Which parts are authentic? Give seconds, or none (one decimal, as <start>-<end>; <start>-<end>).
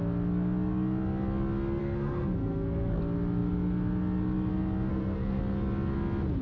0.0-1.8; 3.0-4.9; 5.4-6.4